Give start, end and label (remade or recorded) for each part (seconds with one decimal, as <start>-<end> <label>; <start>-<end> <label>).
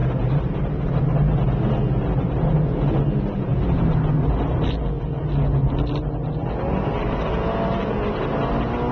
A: 0.0-8.9 recorded